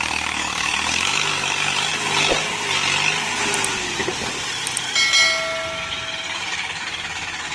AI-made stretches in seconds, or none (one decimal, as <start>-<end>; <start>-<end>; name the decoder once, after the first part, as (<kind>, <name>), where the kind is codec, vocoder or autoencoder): 0.0-1.9 (codec, DAC); 6.3-7.5